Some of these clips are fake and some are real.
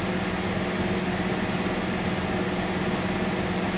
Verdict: real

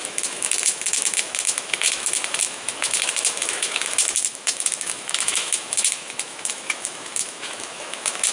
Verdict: fake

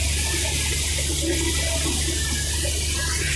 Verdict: real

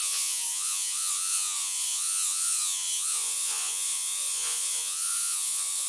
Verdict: fake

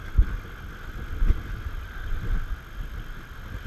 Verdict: real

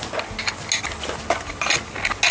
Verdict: real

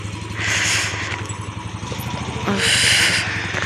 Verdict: real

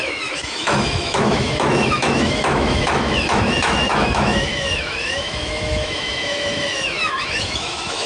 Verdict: fake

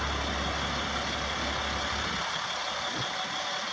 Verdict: real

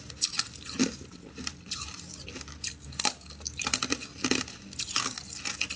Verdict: real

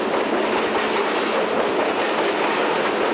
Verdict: real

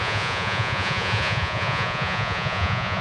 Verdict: fake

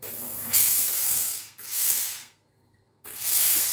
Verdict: fake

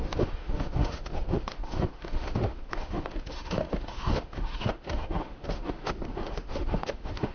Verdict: fake